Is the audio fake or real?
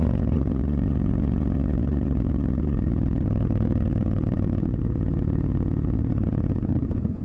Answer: fake